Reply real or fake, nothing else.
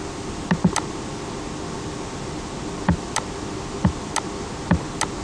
real